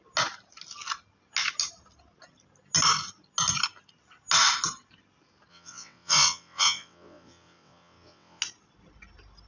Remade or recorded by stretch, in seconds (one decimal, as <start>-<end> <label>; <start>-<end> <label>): 0.0-5.5 recorded; 5.5-8.4 remade; 8.4-9.5 recorded